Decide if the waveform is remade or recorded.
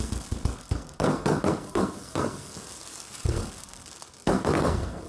remade